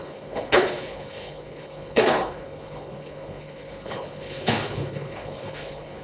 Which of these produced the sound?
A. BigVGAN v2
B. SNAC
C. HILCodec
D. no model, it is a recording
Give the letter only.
C